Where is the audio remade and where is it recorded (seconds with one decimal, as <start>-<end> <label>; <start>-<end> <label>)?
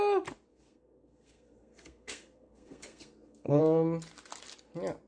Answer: 0.0-0.5 recorded; 0.5-3.6 remade; 3.6-5.1 recorded